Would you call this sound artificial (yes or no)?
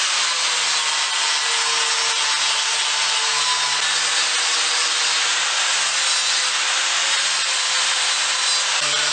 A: no